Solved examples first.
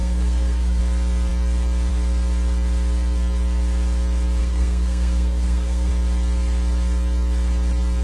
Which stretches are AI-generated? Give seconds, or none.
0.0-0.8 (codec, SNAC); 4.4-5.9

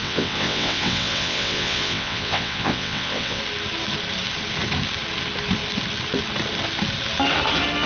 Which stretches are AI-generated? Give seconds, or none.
0.0-3.4 (vocoder, WaveNeXt)

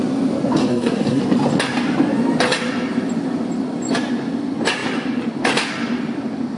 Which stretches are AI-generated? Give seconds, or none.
0.6-1.2 (codec, SNAC)

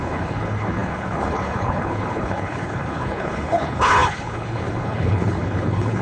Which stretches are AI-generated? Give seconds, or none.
0.0-6.0 (codec, HILCodec)

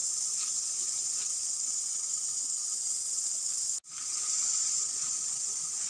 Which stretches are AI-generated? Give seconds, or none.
0.0-2.4 (vocoder, BigVGAN v2)